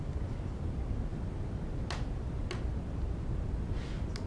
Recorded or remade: recorded